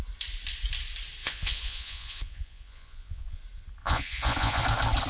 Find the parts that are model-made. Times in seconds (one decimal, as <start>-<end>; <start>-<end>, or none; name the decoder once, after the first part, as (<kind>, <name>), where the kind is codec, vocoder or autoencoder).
1.2-3.4 (vocoder, Vocos); 3.8-4.6